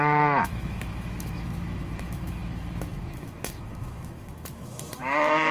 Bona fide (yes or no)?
no